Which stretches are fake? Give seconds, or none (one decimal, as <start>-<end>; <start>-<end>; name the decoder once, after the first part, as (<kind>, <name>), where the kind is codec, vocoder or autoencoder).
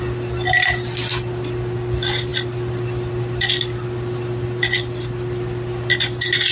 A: none